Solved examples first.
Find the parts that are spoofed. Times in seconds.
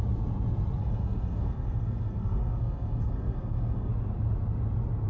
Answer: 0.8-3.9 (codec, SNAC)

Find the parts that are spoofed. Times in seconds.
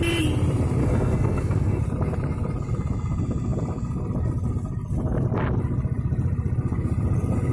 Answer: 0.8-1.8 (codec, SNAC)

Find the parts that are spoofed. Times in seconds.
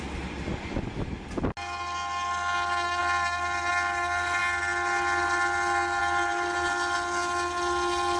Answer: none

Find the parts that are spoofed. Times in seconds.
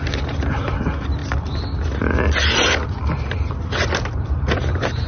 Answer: none